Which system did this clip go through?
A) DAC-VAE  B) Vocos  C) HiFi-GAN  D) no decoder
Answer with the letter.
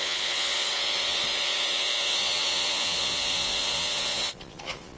B